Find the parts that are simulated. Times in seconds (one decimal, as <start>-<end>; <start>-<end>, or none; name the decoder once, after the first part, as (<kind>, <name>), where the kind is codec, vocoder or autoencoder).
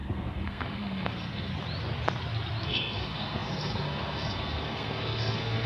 0.0-1.5 (codec, SNAC); 2.7-5.7